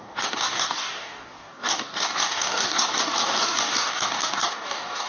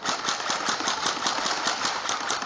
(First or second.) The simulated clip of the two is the first